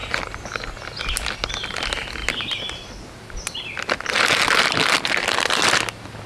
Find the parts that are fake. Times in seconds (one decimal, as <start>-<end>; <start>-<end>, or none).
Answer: none